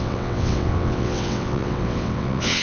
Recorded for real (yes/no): no